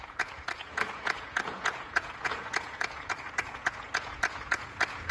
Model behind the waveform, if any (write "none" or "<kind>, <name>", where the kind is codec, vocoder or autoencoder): vocoder, Vocos